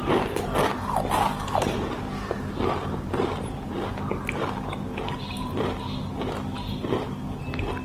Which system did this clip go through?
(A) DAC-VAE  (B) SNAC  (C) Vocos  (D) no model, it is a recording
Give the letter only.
D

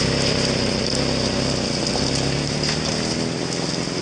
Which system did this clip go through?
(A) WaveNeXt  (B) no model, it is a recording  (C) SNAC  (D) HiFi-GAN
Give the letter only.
B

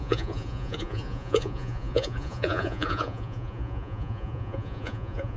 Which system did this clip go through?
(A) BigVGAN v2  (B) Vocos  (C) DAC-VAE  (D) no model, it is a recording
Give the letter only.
B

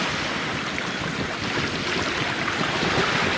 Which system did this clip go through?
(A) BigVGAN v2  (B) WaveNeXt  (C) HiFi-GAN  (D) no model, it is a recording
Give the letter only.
D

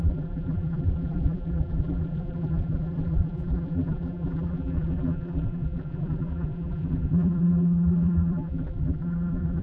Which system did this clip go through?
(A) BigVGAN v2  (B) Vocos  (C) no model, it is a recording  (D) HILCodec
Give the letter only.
A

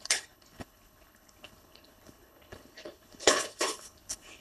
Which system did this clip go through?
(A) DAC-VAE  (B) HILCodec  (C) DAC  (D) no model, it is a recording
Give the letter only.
B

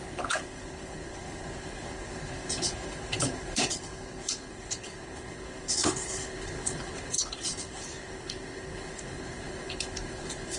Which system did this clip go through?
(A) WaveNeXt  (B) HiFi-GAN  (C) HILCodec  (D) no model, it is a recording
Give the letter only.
C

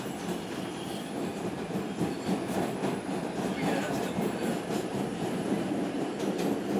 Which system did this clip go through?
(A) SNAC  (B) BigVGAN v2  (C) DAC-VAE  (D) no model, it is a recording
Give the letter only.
B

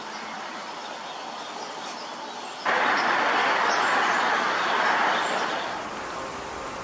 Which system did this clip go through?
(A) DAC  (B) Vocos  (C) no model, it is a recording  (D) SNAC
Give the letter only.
C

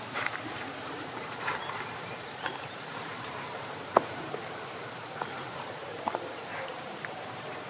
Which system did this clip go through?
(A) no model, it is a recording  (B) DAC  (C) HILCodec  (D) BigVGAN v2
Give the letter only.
D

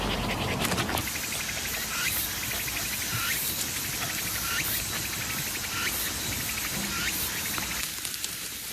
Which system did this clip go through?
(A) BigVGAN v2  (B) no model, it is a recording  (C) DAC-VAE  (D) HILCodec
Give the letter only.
B